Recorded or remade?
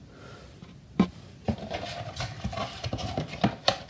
remade